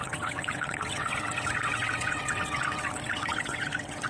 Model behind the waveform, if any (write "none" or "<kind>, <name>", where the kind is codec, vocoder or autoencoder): vocoder, WaveNeXt